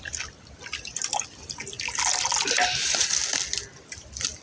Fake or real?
real